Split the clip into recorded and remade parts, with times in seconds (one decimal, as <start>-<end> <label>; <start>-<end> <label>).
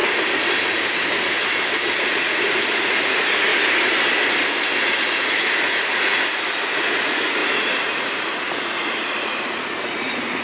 0.0-2.1 recorded; 2.1-3.5 remade; 3.5-4.8 recorded; 4.8-10.4 remade